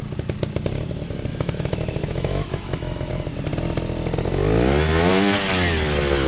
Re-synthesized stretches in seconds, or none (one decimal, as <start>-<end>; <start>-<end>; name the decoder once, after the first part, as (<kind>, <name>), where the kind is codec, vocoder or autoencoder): 1.3-3.1 (autoencoder, DAC-VAE)